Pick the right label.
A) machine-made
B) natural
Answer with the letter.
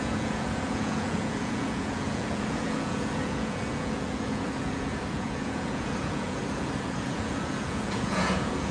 A